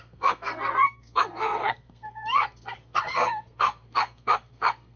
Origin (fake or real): fake